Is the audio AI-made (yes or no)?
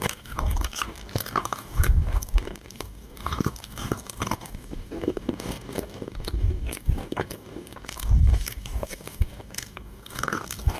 yes